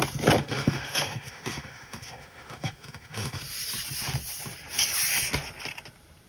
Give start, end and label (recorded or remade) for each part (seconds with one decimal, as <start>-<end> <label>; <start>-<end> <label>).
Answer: 0.0-0.4 recorded; 0.4-3.4 remade; 3.4-6.3 recorded